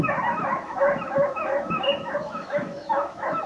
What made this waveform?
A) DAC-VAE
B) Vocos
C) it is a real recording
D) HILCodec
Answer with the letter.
A